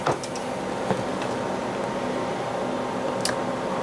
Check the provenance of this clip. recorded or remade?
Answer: recorded